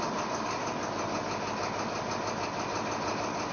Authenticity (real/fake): real